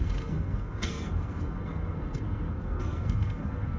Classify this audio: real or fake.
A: fake